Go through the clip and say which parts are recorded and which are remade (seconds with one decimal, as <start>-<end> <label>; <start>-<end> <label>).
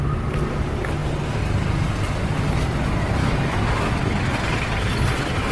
0.0-3.2 recorded; 3.2-3.9 remade; 3.9-5.5 recorded